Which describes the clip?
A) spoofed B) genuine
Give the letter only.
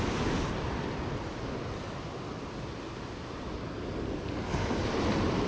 B